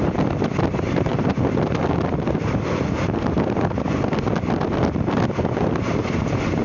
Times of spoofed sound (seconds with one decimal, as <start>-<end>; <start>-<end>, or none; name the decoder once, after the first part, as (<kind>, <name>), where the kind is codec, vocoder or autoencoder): none

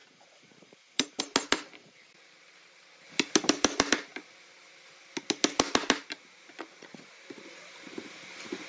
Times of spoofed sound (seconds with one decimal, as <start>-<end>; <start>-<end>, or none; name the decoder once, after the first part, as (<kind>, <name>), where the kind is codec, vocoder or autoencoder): 0.0-1.2 (vocoder, Vocos); 6.4-7.0

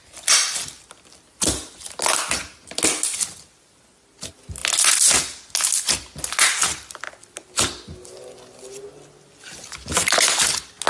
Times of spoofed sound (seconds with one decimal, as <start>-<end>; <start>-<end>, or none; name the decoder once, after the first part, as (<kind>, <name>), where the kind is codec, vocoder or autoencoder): none

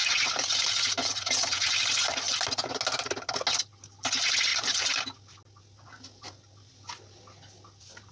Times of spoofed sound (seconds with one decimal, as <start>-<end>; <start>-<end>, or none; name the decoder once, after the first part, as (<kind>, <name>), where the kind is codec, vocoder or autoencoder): none